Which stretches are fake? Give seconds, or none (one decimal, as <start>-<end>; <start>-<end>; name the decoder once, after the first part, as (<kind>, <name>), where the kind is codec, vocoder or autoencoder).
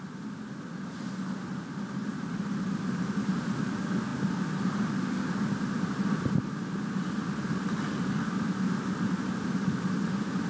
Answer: 2.0-3.5 (vocoder, BigVGAN v2)